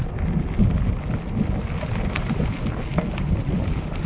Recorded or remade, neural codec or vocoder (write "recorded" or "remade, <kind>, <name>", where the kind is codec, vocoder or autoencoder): recorded